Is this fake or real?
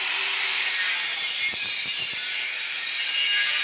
fake